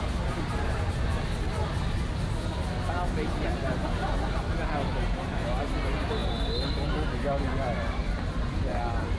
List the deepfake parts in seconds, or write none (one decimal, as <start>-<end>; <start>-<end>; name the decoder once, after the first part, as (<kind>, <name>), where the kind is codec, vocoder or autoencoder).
8.0-8.7 (vocoder, BigVGAN v2)